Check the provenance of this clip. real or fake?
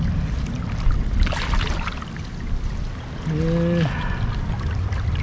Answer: real